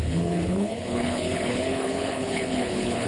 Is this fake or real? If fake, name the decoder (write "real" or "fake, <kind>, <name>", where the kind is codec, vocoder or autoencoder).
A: fake, codec, HILCodec